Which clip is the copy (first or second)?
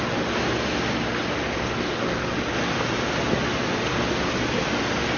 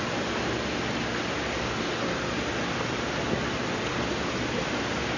second